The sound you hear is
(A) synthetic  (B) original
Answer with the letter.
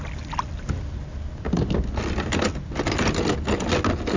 B